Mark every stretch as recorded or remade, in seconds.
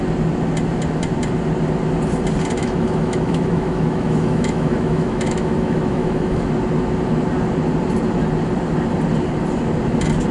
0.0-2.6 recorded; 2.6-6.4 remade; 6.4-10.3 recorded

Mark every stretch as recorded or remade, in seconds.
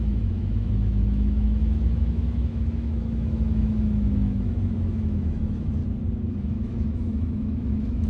0.0-5.8 remade; 5.8-6.3 recorded; 6.3-8.1 remade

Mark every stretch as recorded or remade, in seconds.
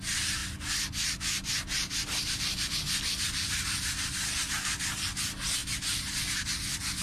0.0-7.0 recorded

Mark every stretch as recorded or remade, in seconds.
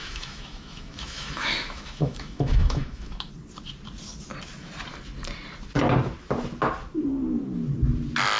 0.0-3.3 remade; 3.3-8.4 recorded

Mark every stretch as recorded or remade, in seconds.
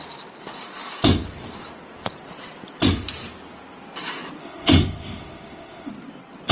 0.0-4.4 recorded; 4.4-5.9 remade; 5.9-6.5 recorded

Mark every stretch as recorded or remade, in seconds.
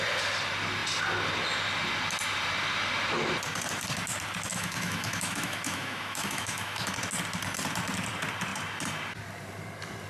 0.0-4.5 recorded; 4.5-6.9 remade; 6.9-10.1 recorded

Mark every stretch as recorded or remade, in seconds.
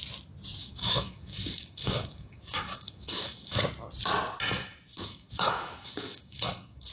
0.0-0.6 recorded; 0.6-3.6 remade; 3.6-4.9 recorded; 4.9-6.9 remade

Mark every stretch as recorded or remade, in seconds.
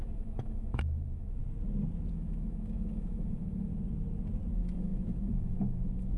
0.0-1.4 remade; 1.4-2.1 recorded; 2.1-3.7 remade; 3.7-4.5 recorded; 4.5-6.2 remade